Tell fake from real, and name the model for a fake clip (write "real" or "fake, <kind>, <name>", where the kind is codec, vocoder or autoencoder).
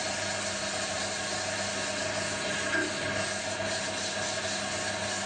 real